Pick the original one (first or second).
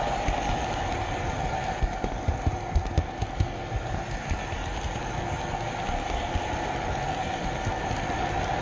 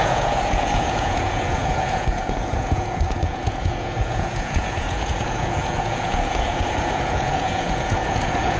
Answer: first